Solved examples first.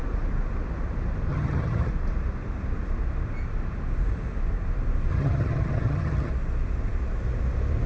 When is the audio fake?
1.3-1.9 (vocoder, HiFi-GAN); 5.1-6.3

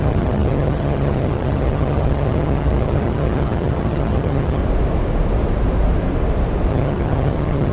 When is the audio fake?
0.0-4.6 (vocoder, HiFi-GAN); 6.7-7.7

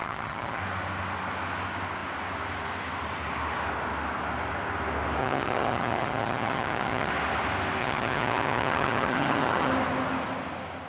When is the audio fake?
0.0-0.6 (vocoder, HiFi-GAN); 5.2-7.1; 7.8-9.7

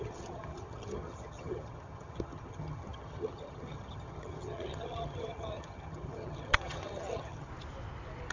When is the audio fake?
0.0-7.5 (vocoder, HiFi-GAN)

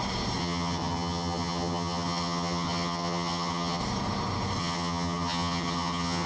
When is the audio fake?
0.4-3.8 (vocoder, HiFi-GAN); 4.6-6.3

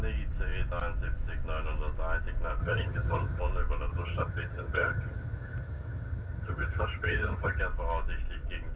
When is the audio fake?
2.6-3.4 (vocoder, HiFi-GAN); 3.9-7.6

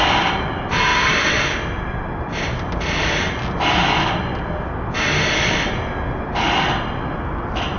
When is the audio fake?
none